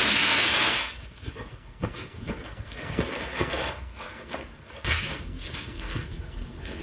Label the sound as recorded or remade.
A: remade